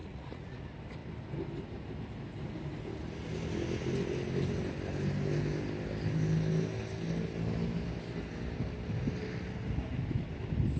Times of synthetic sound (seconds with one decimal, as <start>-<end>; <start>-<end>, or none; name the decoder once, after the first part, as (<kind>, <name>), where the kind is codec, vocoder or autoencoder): 0.0-0.6 (vocoder, Vocos)